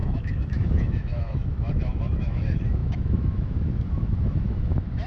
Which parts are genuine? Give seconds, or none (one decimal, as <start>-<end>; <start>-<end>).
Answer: none